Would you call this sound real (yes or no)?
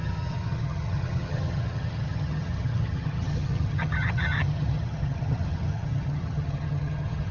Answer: no